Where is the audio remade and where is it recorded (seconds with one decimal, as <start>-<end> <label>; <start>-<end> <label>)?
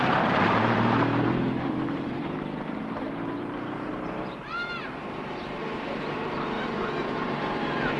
0.0-3.9 remade; 3.9-4.4 recorded; 4.4-8.0 remade